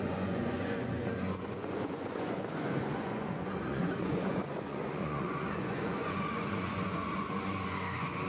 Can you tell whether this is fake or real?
fake